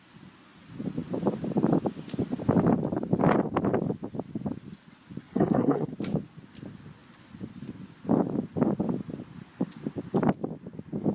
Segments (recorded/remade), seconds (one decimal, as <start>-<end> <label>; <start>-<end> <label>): 0.0-5.2 recorded; 5.2-5.9 remade; 5.9-11.1 recorded